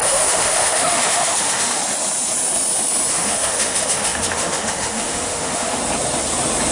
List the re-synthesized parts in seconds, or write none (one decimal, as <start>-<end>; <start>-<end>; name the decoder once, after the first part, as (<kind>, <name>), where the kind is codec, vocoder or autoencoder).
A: 0.0-1.8 (autoencoder, DAC-VAE); 3.1-5.8